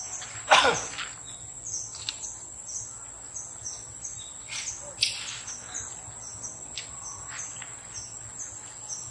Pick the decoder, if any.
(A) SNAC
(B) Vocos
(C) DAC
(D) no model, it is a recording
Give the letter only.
D